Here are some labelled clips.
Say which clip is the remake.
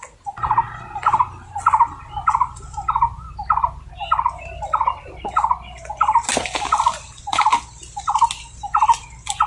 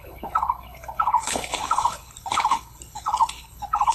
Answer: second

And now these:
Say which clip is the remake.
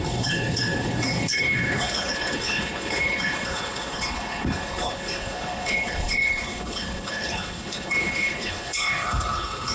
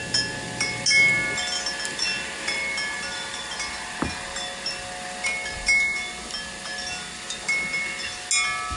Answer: first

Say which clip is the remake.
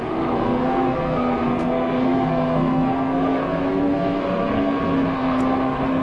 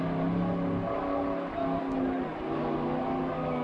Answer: first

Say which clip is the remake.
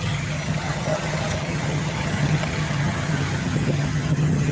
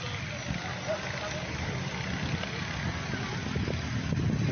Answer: first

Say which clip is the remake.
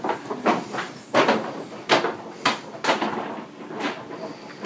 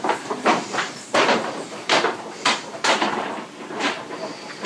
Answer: second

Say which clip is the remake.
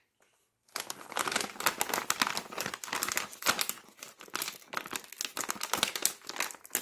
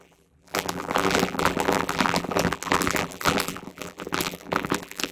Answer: second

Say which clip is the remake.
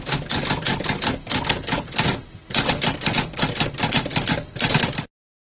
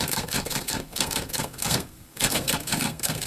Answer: second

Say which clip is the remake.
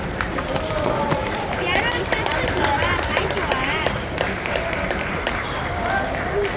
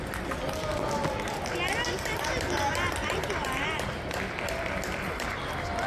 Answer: first